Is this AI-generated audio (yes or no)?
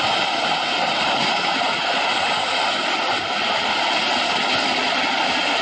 no